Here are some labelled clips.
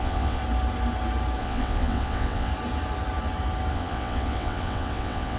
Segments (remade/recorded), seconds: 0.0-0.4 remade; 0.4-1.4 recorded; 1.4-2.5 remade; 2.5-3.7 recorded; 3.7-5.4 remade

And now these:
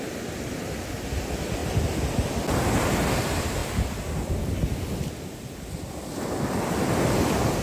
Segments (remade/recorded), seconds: 0.0-7.6 recorded

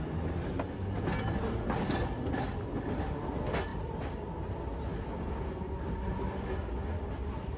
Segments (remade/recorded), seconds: 0.0-7.6 recorded

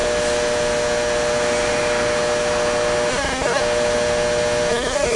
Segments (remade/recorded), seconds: 0.0-3.1 recorded; 3.1-3.6 remade; 3.6-4.7 recorded; 4.7-5.2 remade

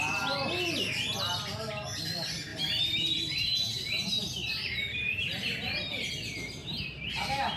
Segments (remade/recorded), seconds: 0.0-2.5 recorded; 2.5-6.1 remade; 6.1-6.6 recorded; 6.6-7.1 remade; 7.1-7.6 recorded

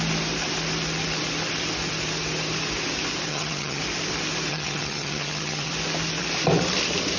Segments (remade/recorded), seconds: 0.0-3.3 recorded; 3.3-3.8 remade; 3.8-4.5 recorded; 4.5-5.7 remade; 5.7-7.2 recorded

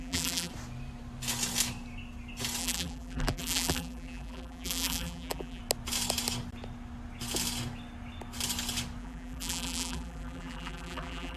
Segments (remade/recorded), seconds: 0.0-0.5 remade; 0.5-2.6 recorded; 2.6-5.6 remade; 5.6-9.0 recorded; 9.0-11.4 remade

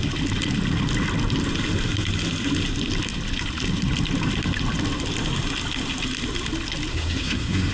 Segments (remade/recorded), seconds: 0.0-6.9 recorded; 6.9-7.7 remade